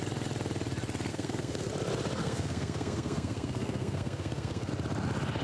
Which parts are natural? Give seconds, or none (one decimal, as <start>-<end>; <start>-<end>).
0.0-1.1; 1.7-2.2; 4.7-5.4